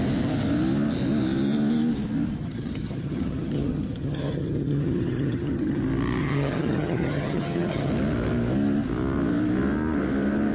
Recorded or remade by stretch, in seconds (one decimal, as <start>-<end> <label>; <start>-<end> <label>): 0.0-2.4 recorded; 2.4-5.8 remade; 5.8-6.2 recorded; 6.2-7.9 remade; 7.9-10.5 recorded